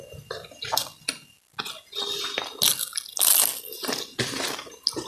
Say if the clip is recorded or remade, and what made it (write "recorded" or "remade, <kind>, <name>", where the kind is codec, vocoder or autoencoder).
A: recorded